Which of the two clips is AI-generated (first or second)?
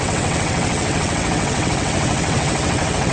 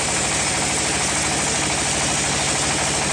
first